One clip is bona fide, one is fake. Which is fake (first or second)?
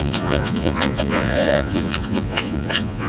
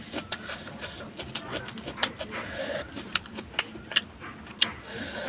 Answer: first